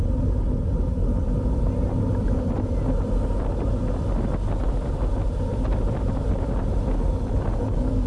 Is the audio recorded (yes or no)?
yes